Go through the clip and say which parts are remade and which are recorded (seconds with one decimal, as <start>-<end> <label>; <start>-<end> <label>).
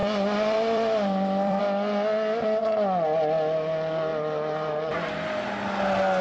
0.0-1.6 remade; 1.6-4.1 recorded; 4.1-4.9 remade; 4.9-6.2 recorded